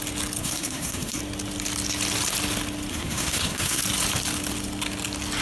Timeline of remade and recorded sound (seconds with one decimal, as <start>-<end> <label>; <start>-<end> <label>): 0.0-0.4 recorded; 0.4-1.2 remade; 1.2-2.9 recorded; 2.9-3.8 remade; 3.8-5.4 recorded